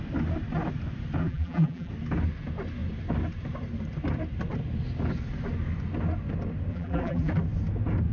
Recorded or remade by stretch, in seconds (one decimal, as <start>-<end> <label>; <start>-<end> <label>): 0.0-1.2 recorded; 1.2-1.9 remade; 1.9-6.7 recorded; 6.7-7.3 remade; 7.3-8.1 recorded